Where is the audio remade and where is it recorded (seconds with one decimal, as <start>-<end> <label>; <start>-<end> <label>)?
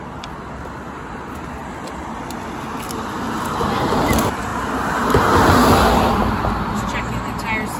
0.0-7.8 recorded